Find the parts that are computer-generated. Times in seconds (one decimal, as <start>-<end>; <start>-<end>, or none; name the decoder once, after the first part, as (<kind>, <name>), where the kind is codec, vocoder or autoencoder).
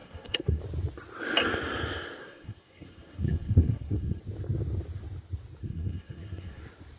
0.0-0.6 (codec, SNAC); 2.2-4.2; 5.6-6.6